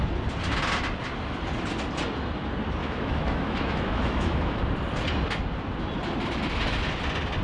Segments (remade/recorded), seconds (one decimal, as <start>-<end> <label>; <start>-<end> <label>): 0.0-2.8 recorded; 2.8-4.6 remade; 4.6-7.4 recorded